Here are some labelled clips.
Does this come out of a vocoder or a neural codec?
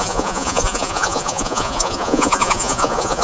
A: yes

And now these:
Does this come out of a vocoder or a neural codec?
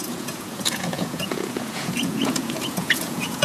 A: yes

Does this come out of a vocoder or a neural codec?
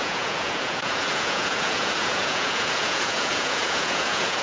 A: yes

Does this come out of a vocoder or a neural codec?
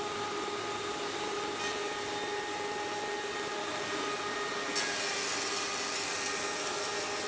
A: no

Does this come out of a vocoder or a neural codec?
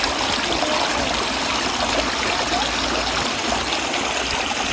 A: no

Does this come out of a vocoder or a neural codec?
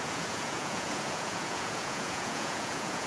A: yes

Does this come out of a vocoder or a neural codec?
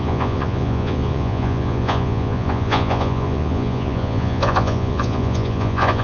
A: yes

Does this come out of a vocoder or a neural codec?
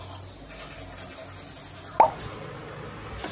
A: no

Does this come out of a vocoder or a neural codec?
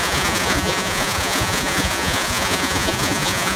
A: yes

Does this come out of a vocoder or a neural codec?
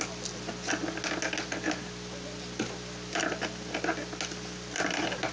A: no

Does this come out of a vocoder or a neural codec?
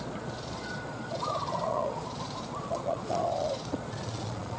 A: yes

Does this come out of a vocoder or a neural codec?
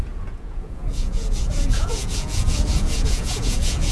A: yes